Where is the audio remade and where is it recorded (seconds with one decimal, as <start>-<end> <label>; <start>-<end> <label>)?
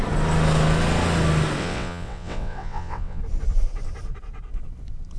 0.0-1.6 recorded; 1.6-3.2 remade; 3.2-5.2 recorded